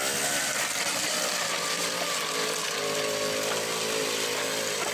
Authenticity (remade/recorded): recorded